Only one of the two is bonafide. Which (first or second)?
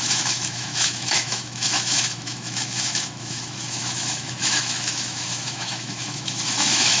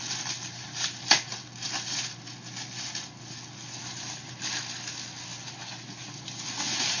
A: second